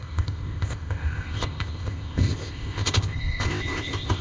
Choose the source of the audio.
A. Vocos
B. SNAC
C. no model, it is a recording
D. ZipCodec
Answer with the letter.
D